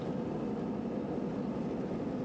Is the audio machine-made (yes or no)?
no